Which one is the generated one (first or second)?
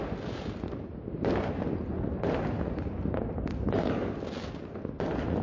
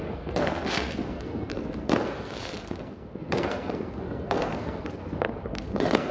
second